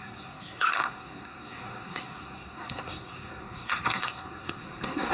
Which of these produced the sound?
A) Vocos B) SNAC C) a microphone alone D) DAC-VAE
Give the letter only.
B